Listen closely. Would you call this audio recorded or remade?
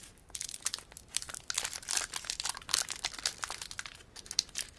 recorded